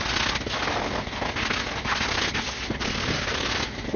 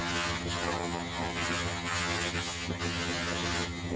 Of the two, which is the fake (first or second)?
second